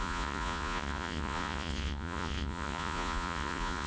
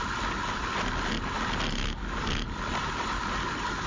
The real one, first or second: second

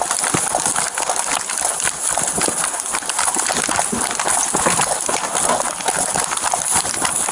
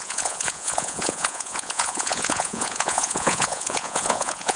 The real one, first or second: first